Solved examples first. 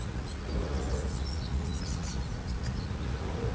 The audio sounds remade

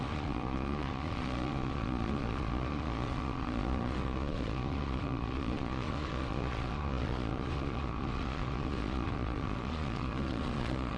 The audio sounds remade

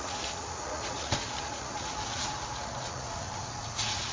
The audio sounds remade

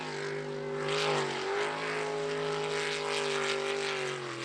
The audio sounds recorded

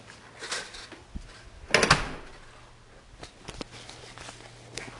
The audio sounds recorded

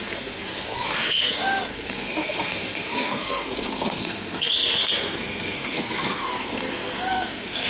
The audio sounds remade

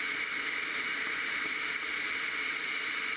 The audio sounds recorded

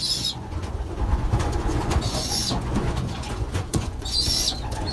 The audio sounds remade